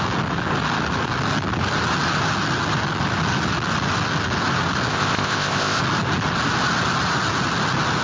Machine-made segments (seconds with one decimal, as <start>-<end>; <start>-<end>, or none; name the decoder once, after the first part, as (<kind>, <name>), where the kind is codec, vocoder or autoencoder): 4.9-5.8 (codec, ZipCodec)